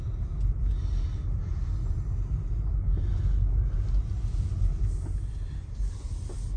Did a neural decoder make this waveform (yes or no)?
no